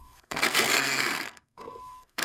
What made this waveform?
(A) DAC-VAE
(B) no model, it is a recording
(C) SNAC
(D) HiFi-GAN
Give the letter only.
C